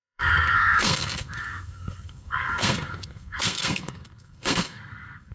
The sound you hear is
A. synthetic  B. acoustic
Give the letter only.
A